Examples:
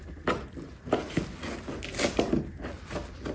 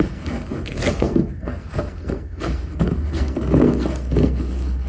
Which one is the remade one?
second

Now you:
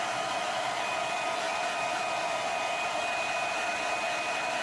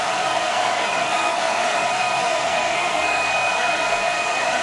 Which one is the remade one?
second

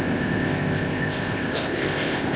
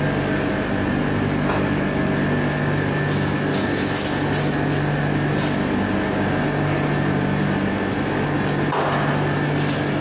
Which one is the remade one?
first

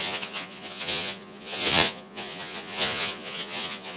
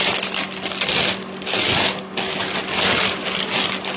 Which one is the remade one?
first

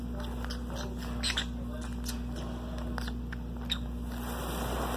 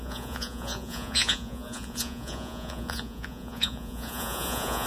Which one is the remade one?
second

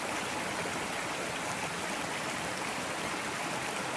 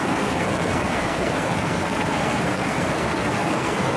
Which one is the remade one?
second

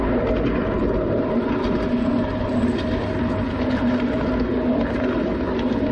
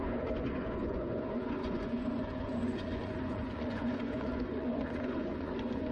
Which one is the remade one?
second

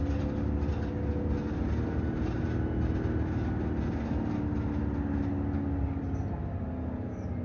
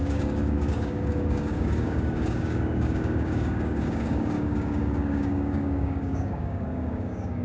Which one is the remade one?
second